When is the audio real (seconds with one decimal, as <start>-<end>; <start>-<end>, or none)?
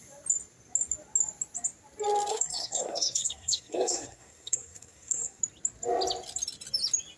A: 0.0-2.3; 5.4-7.2